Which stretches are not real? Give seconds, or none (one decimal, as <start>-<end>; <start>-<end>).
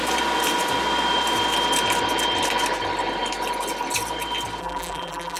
4.6-5.4